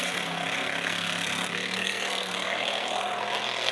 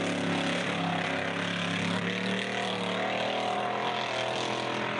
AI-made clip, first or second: first